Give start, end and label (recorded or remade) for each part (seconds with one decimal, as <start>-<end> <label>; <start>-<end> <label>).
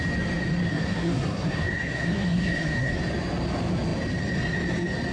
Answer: 0.0-0.7 recorded; 0.7-3.0 remade; 3.0-5.1 recorded